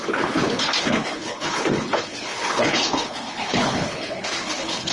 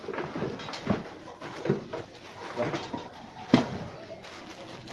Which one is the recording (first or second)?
second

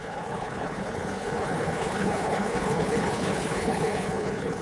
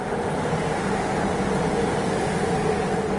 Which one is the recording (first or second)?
second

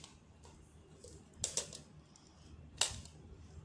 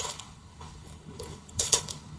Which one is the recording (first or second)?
first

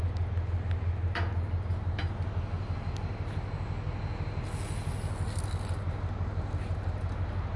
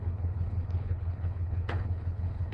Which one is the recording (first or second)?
first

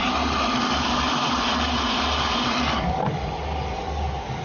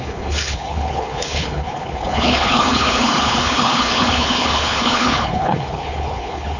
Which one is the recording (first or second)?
first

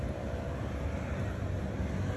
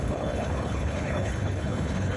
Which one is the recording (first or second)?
first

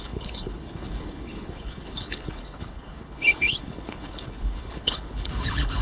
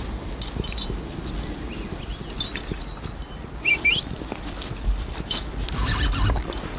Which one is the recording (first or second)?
second